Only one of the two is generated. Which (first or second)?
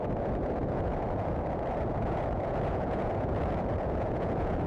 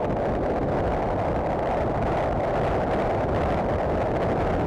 first